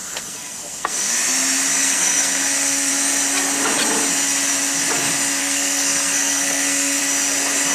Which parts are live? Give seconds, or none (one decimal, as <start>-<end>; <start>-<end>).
1.1-1.7; 2.9-5.4; 7.0-7.7